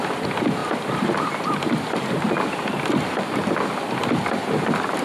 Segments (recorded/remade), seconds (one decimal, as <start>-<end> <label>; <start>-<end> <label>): 0.0-5.0 recorded